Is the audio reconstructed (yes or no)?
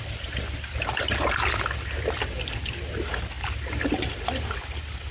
no